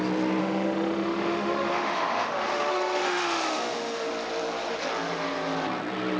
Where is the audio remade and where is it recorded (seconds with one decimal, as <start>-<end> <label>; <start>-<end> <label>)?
0.0-0.4 recorded; 0.4-4.1 remade; 4.1-6.2 recorded